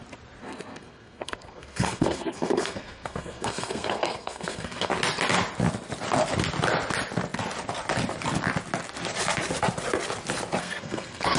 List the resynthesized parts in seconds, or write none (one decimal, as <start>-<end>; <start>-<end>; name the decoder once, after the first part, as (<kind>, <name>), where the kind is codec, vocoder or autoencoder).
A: 0.4-4.9 (codec, SNAC); 10.6-11.4